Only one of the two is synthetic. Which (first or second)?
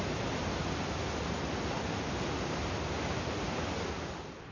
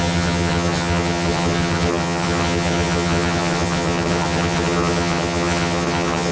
second